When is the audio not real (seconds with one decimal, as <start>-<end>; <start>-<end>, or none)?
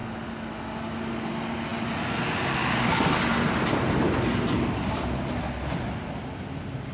none